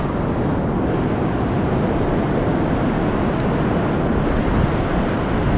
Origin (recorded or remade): recorded